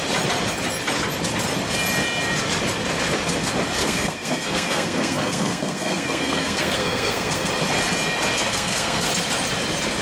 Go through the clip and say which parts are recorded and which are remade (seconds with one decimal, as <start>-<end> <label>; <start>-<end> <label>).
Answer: 0.0-3.8 recorded; 3.8-7.5 remade; 7.5-8.5 recorded; 8.5-9.1 remade; 9.1-10.0 recorded